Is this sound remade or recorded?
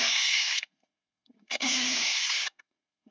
remade